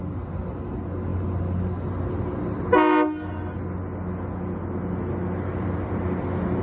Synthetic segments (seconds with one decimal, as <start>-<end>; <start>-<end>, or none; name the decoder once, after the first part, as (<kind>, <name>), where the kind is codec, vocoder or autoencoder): none